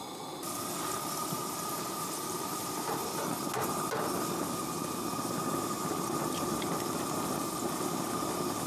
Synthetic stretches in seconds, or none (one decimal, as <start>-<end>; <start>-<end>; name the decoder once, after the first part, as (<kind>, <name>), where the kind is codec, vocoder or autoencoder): 1.2-3.2 (vocoder, BigVGAN v2); 5.1-5.9